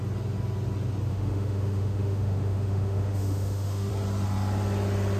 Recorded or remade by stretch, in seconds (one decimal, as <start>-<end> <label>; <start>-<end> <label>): 0.0-1.1 recorded; 1.1-3.9 remade; 3.9-5.2 recorded